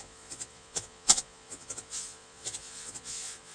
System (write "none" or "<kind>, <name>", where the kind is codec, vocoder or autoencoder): vocoder, Vocos